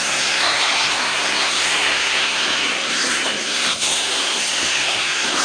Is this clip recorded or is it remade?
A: remade